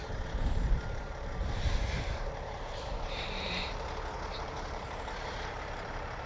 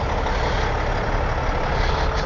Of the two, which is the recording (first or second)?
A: second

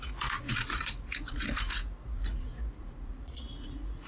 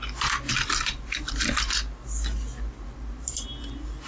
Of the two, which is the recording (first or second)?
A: second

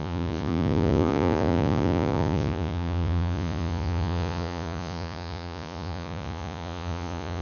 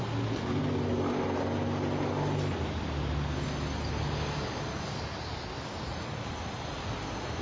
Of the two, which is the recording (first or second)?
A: second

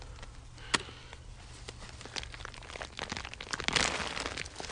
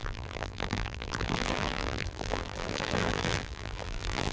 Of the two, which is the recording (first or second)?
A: first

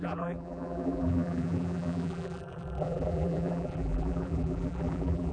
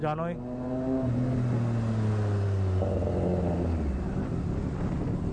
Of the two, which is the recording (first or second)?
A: second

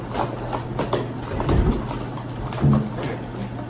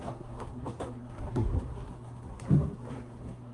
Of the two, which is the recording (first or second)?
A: first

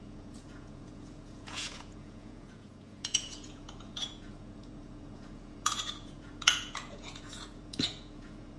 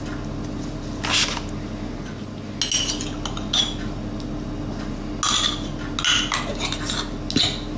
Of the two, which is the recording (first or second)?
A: second